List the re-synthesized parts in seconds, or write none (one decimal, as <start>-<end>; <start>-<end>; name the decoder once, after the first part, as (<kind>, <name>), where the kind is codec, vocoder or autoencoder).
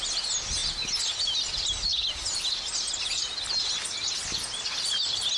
none